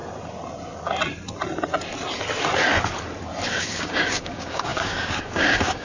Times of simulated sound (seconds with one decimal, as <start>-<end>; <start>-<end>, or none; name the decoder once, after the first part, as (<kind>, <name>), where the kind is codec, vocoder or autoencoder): 3.5-5.8 (codec, DAC)